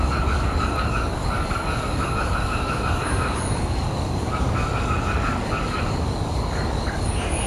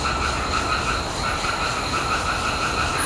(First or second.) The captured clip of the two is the second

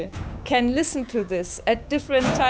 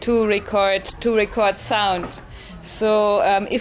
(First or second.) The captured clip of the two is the second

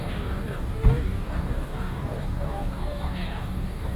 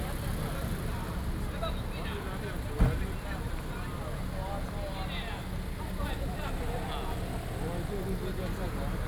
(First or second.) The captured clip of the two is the second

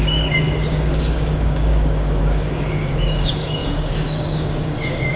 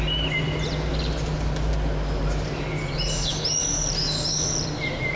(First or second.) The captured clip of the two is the second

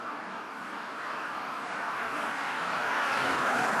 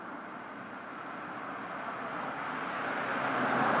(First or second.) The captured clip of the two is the second